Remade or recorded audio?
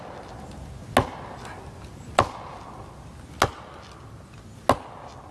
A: recorded